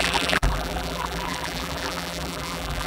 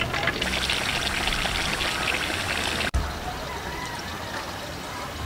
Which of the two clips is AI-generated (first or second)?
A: first